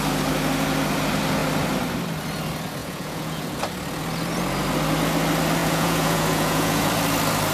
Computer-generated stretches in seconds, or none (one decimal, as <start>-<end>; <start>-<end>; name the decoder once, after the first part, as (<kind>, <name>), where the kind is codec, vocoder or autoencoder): 2.8-3.6 (vocoder, Vocos); 5.6-6.9